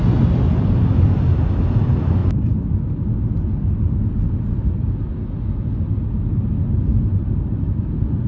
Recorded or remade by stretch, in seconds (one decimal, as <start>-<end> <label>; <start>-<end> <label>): 0.0-6.9 recorded; 6.9-7.9 remade; 7.9-8.3 recorded